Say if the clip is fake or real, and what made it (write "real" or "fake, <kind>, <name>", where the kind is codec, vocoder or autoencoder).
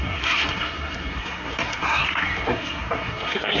fake, codec, SNAC